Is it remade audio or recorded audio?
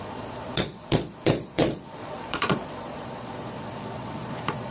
remade